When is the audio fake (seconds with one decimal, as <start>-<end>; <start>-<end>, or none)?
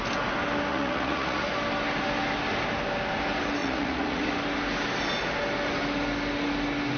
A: 0.7-1.5; 3.6-4.3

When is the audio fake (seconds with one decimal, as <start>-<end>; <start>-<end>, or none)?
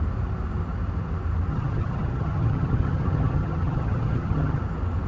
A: 1.5-4.6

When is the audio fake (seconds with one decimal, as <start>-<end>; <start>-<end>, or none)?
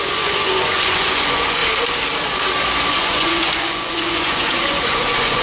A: 0.0-1.6; 2.9-5.4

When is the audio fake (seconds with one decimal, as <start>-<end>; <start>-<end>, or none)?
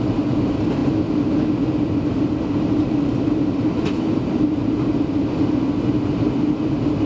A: none